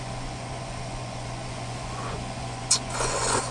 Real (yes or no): no